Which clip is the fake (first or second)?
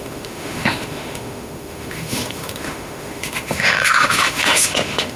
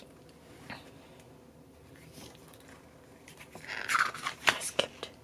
first